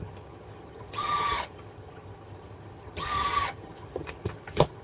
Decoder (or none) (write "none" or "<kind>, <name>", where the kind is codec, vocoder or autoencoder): vocoder, HiFi-GAN